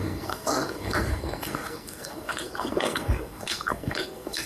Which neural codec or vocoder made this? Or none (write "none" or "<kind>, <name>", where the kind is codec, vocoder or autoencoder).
codec, SNAC